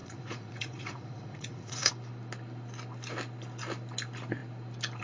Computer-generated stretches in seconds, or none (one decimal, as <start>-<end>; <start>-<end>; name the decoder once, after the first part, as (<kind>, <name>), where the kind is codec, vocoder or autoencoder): 0.0-1.9 (vocoder, Vocos)